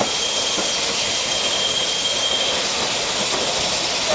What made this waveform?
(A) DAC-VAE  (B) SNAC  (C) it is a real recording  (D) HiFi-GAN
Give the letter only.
C